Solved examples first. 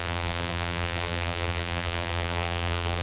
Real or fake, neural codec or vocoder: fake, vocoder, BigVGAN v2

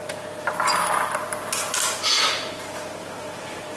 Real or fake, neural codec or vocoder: real